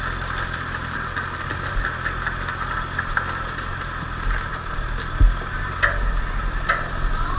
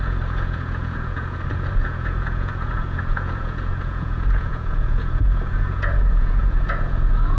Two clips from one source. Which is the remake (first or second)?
second